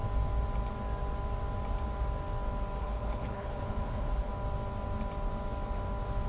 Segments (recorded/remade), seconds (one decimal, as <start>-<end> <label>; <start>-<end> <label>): 0.0-2.8 recorded; 2.8-4.3 remade; 4.3-6.3 recorded